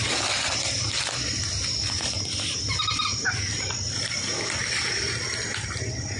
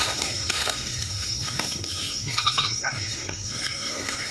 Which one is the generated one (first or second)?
second